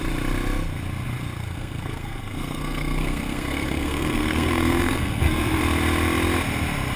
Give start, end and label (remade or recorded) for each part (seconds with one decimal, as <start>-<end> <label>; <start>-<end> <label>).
0.0-1.4 recorded; 1.4-5.6 remade; 5.6-7.0 recorded